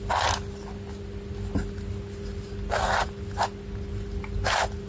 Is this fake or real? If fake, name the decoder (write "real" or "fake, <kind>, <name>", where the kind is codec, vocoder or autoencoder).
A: real